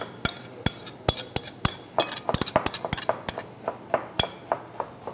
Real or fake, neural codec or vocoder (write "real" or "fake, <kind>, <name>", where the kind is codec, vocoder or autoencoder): real